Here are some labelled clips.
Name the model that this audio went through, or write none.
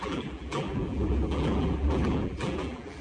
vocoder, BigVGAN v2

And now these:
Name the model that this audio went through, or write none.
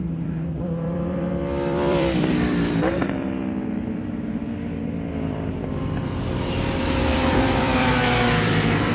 vocoder, BigVGAN v2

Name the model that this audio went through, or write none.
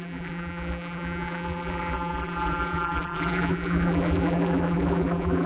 vocoder, BigVGAN v2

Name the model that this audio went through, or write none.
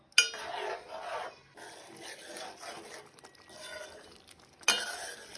none